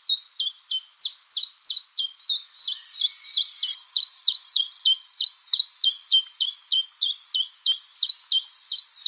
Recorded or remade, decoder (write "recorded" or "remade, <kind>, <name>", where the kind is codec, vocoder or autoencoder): recorded